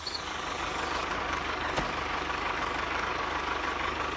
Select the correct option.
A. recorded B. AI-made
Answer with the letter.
B